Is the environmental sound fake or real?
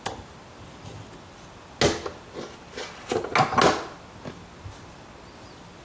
real